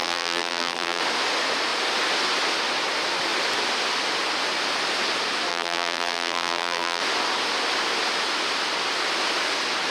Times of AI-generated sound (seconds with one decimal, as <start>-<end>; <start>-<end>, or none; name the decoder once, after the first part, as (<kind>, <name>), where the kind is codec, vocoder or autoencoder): 0.0-1.0 (vocoder, BigVGAN v2); 5.5-7.0